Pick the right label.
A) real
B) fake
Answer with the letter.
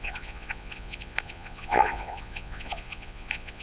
B